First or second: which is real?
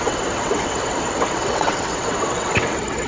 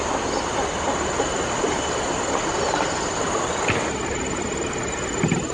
second